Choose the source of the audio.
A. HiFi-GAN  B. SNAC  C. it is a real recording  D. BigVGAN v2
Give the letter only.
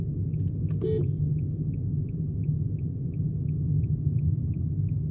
C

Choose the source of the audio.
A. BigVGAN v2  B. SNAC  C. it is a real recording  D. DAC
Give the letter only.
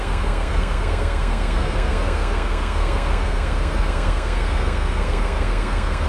B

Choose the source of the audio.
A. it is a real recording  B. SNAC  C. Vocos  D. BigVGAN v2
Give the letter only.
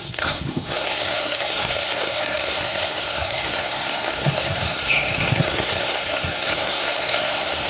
B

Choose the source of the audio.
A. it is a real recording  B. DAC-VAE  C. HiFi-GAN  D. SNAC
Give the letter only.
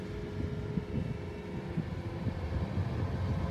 A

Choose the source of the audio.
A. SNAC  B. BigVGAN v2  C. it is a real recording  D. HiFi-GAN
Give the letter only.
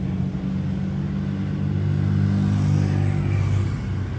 C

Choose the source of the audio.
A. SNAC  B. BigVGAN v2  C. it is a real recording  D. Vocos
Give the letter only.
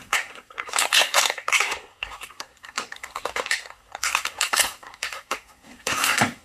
A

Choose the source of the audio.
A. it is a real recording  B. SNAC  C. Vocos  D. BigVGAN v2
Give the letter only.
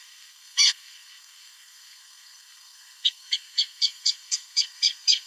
B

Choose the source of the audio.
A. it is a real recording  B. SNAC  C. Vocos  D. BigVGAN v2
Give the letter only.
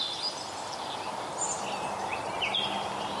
A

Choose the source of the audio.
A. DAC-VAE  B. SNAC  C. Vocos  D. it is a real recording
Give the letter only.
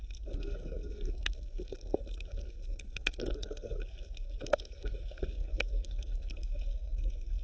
B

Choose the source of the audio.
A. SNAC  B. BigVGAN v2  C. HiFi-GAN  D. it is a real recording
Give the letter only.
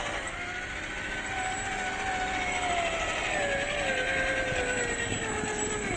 D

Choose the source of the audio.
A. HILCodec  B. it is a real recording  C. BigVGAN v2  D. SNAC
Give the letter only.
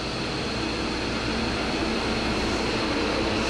B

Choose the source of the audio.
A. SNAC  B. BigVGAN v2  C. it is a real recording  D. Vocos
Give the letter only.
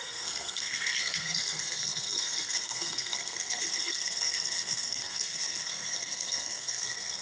A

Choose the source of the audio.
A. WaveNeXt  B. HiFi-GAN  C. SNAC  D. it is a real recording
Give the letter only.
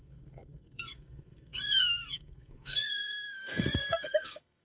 C